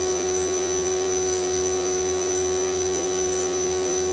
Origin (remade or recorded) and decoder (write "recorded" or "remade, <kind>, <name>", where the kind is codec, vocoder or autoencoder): remade, vocoder, BigVGAN v2